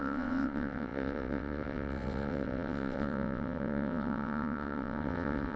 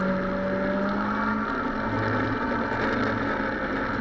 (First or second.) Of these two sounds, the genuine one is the second